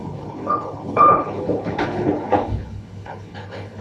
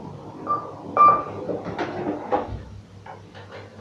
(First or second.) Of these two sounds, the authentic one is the second